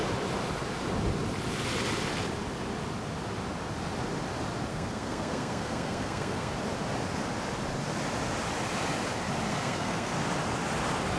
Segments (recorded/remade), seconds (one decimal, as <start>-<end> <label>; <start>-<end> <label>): 0.0-4.7 recorded; 4.7-6.5 remade; 6.5-9.5 recorded; 9.5-10.1 remade; 10.1-11.2 recorded